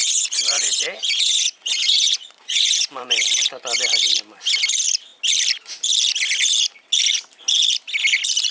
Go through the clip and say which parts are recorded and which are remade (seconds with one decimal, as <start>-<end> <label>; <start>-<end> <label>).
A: 0.0-3.0 remade; 3.0-8.5 recorded